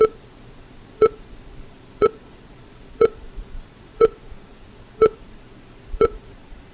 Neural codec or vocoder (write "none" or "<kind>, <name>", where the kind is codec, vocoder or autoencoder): vocoder, Vocos